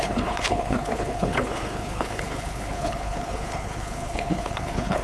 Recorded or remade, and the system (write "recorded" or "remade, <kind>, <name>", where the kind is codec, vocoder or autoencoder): remade, codec, HILCodec